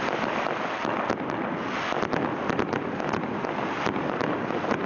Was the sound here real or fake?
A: real